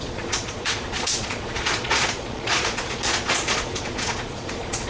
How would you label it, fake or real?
fake